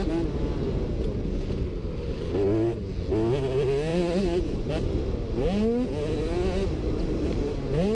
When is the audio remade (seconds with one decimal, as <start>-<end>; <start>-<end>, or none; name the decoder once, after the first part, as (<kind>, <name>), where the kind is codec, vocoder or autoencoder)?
3.9-4.7 (vocoder, Vocos)